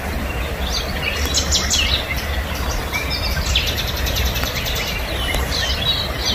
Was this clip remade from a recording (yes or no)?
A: no